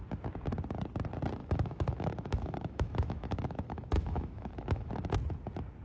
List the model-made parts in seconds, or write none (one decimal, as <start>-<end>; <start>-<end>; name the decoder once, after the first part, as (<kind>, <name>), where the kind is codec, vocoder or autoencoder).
1.4-4.9 (autoencoder, DAC-VAE)